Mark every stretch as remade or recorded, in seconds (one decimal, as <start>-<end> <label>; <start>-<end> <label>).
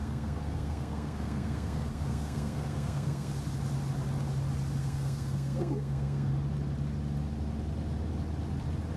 0.0-3.3 remade; 3.3-4.8 recorded; 4.8-6.3 remade; 6.3-9.0 recorded